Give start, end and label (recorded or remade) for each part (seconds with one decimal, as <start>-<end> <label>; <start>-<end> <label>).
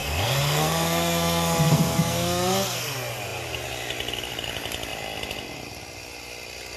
0.0-2.9 remade; 2.9-6.8 recorded